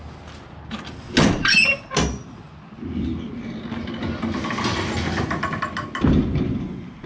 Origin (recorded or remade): recorded